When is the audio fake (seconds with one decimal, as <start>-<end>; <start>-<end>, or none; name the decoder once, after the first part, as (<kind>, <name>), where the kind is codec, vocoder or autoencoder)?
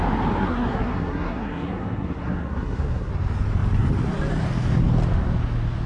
0.4-3.1 (codec, SNAC)